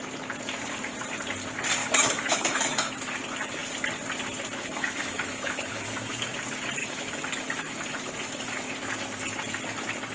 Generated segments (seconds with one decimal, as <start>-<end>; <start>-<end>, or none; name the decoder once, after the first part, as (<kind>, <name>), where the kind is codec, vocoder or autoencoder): 1.8-2.9 (autoencoder, DAC-VAE); 4.6-6.3; 6.8-8.7